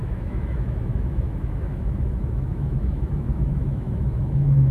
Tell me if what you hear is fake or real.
fake